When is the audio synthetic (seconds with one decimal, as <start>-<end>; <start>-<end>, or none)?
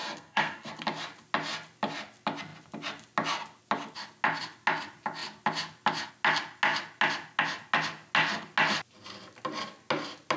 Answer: 0.0-0.7